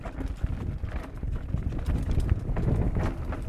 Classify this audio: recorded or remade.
recorded